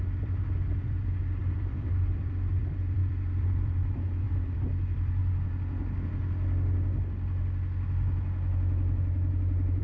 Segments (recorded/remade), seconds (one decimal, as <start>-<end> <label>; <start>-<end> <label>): 0.0-5.2 remade; 5.2-9.8 recorded